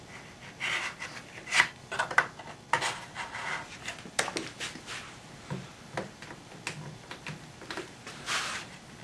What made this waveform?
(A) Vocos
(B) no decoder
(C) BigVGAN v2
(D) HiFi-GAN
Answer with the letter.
B